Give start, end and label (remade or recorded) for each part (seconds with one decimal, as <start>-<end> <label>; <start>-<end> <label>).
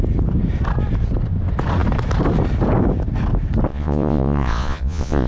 0.0-3.7 recorded; 3.7-5.3 remade